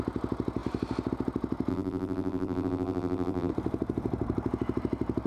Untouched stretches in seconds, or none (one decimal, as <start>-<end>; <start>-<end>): 0.0-1.7; 3.5-5.3